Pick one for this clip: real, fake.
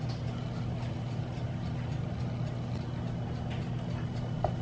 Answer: real